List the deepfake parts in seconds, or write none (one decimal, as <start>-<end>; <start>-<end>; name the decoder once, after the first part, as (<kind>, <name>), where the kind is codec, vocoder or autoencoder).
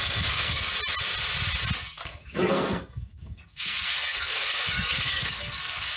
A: 0.0-0.7 (codec, SNAC); 1.8-6.0